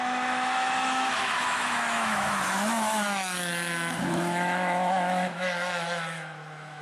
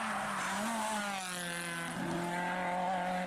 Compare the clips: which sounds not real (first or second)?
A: first